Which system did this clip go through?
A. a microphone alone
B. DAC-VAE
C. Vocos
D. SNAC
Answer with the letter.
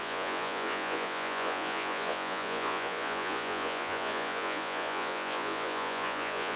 C